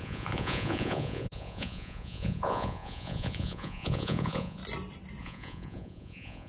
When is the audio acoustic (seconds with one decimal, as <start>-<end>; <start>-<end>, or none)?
4.6-5.2